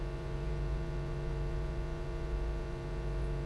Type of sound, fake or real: fake